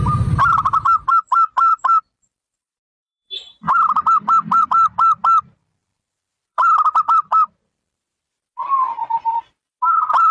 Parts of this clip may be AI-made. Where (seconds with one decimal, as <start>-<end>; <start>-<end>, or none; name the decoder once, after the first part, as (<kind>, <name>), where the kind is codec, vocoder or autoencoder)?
1.7-4.7 (vocoder, BigVGAN v2); 5.8-8.3